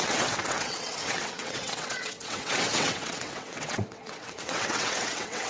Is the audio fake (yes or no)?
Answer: yes